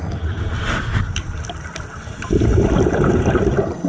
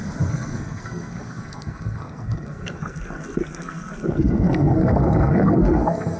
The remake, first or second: second